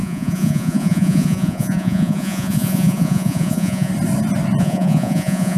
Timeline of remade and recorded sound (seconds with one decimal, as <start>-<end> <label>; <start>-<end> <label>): 0.0-3.9 remade; 3.9-4.6 recorded; 4.6-5.6 remade